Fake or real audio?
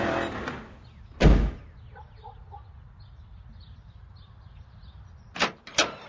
real